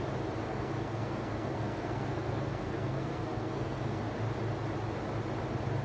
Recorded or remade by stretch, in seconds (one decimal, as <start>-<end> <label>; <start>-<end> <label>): 0.0-0.5 recorded; 0.5-4.0 remade; 4.0-5.8 recorded